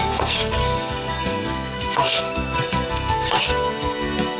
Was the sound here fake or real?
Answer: fake